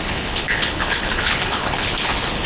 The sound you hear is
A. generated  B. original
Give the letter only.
A